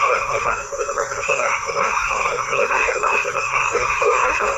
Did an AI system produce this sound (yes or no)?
yes